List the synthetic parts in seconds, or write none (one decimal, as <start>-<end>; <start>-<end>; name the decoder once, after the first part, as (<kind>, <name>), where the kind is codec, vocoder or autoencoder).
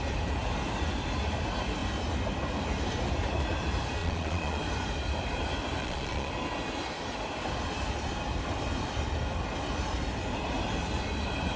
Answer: 4.0-4.6 (vocoder, Vocos); 5.8-6.3